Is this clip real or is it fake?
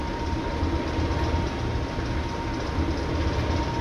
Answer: real